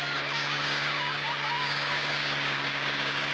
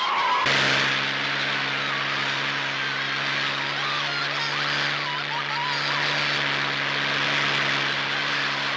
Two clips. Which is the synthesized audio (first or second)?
first